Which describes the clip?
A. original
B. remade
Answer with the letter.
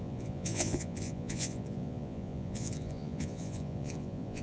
B